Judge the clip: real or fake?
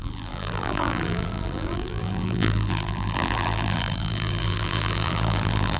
fake